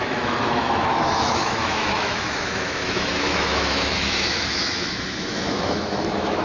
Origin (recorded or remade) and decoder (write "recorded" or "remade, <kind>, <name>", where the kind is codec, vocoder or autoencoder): remade, autoencoder, DAC-VAE